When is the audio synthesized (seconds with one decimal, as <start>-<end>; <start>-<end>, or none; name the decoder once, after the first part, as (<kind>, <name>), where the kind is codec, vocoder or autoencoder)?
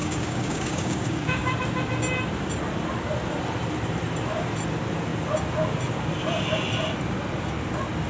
0.0-1.5 (codec, DAC)